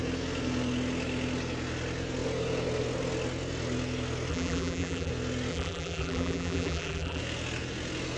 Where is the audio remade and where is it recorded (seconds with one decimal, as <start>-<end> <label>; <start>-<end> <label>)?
0.0-4.3 recorded; 4.3-5.1 remade; 5.1-5.5 recorded; 5.5-7.2 remade; 7.2-8.2 recorded